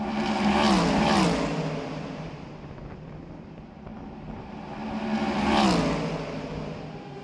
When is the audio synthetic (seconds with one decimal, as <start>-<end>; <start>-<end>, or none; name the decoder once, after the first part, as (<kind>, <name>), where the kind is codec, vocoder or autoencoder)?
none